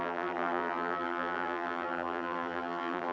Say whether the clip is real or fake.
fake